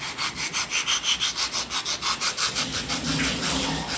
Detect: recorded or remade recorded